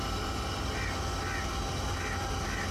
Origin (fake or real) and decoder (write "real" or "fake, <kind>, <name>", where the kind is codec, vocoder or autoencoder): real